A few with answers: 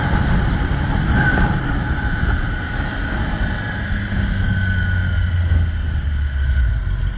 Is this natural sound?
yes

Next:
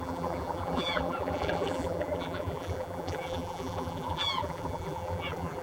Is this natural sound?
no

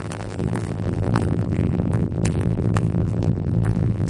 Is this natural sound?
no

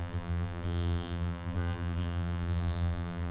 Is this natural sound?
no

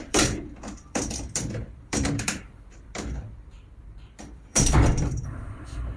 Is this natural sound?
no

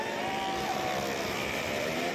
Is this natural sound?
no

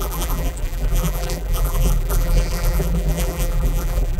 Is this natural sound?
no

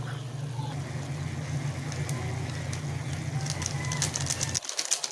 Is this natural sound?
yes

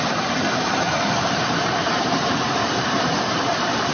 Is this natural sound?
no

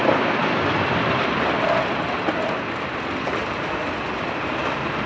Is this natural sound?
yes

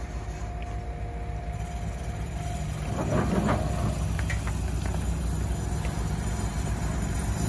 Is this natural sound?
yes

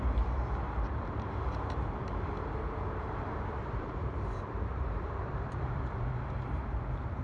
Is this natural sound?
no